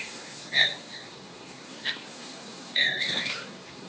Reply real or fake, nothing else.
fake